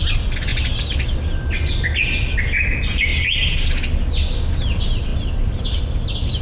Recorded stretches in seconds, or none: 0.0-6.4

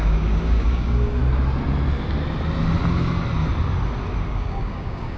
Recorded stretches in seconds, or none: 1.2-4.3

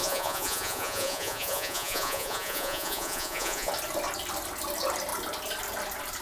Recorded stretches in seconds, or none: 3.7-6.2

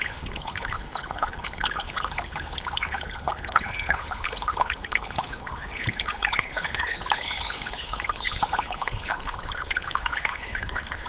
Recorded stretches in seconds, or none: none

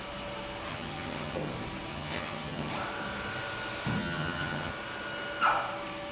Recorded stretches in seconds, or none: 0.0-0.7; 1.5-1.9; 2.7-4.0; 4.7-6.1